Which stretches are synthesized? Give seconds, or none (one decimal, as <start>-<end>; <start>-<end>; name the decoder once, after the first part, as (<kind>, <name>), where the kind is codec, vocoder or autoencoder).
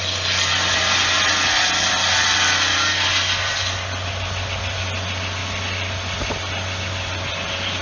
none